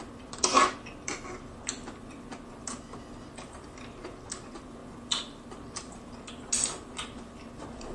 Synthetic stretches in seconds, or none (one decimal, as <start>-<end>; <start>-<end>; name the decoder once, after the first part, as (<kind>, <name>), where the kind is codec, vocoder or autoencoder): none